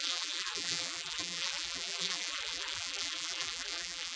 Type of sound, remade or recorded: remade